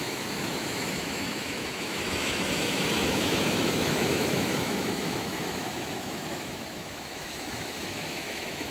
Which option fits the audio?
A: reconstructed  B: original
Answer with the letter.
A